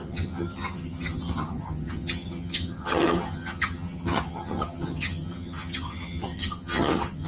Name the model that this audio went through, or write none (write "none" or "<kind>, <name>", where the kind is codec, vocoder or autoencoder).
vocoder, HiFi-GAN